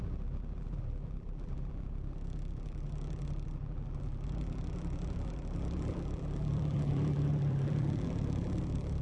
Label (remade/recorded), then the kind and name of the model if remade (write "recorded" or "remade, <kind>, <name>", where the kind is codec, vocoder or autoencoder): remade, vocoder, BigVGAN v2